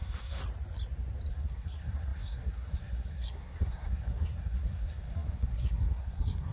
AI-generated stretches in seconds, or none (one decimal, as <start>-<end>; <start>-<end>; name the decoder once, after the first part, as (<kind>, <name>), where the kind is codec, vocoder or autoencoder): 0.0-0.4 (codec, SNAC); 1.3-6.5